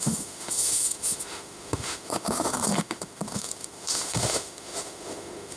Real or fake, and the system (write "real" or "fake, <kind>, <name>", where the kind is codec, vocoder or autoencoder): fake, autoencoder, DAC-VAE